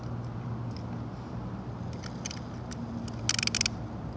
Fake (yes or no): no